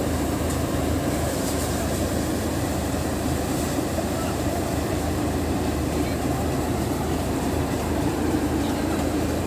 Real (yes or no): no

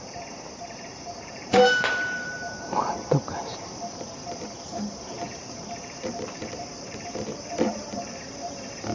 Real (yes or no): no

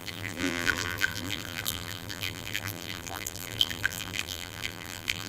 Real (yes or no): no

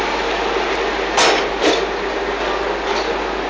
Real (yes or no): yes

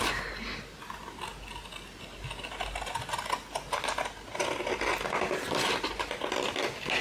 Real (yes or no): yes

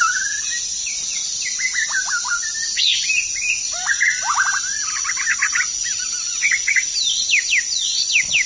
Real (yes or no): yes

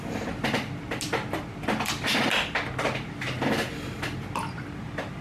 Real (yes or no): yes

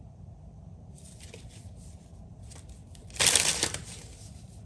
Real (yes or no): no